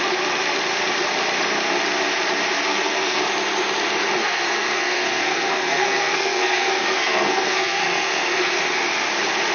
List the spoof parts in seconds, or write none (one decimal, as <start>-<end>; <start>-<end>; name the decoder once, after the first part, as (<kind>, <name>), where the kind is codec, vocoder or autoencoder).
2.7-3.2 (codec, SNAC); 4.2-8.6